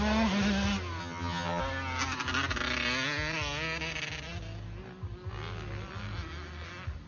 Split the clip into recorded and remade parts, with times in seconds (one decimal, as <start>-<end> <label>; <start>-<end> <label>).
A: 0.0-1.0 recorded; 1.0-1.6 remade; 1.6-7.1 recorded

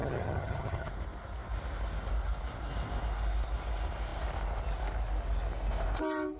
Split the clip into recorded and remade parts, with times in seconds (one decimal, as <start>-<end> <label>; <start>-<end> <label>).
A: 0.0-0.9 remade; 0.9-6.4 recorded

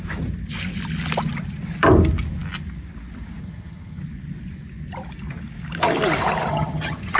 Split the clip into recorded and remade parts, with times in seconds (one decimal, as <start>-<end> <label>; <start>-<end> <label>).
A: 0.0-3.4 recorded; 3.4-4.0 remade; 4.0-6.5 recorded; 6.5-7.2 remade

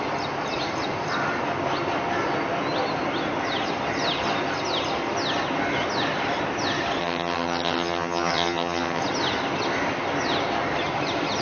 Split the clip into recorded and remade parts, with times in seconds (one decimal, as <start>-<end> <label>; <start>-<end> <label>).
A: 0.0-7.0 recorded; 7.0-9.0 remade; 9.0-11.4 recorded

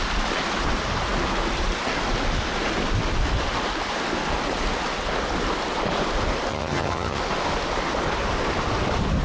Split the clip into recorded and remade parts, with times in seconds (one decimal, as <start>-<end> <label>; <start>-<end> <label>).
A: 0.0-6.5 recorded; 6.5-7.2 remade; 7.2-9.2 recorded

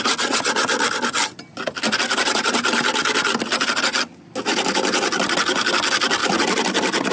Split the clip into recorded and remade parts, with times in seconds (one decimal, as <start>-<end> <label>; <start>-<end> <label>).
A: 0.0-7.1 recorded

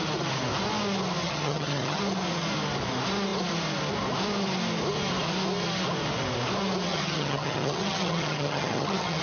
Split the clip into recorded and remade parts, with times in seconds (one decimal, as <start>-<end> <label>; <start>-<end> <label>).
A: 0.0-1.2 recorded; 1.2-2.0 remade; 2.0-6.9 recorded; 6.9-9.2 remade